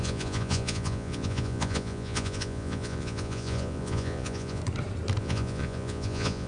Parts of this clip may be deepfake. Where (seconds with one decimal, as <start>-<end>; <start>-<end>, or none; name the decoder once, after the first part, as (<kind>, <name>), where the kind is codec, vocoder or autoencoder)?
0.0-4.6 (vocoder, Vocos); 5.2-6.5